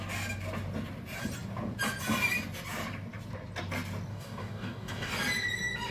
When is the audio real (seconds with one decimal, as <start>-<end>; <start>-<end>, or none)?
0.0-4.1; 5.1-5.9